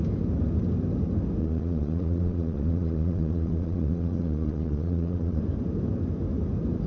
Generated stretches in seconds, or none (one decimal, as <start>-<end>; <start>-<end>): 1.4-5.4